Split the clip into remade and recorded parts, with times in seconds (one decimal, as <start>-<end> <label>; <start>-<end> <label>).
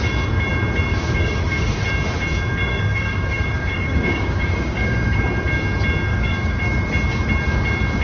0.0-0.9 recorded; 0.9-1.8 remade; 1.8-2.6 recorded; 2.6-5.2 remade; 5.2-6.1 recorded; 6.1-6.6 remade; 6.6-8.0 recorded